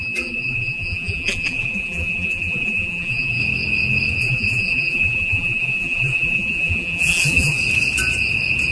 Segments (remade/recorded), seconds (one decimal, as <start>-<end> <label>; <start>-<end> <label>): 0.0-3.4 remade; 3.4-4.2 recorded; 4.2-7.6 remade; 7.6-8.7 recorded